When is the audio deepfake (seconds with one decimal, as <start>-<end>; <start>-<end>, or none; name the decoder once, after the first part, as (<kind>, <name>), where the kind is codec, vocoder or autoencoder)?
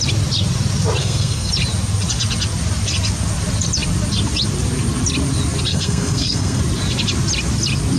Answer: 1.0-1.5 (codec, SNAC); 5.7-6.6